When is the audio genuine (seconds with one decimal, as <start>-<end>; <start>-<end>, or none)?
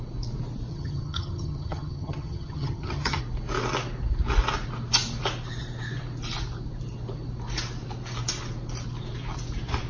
0.0-0.7; 3.2-9.9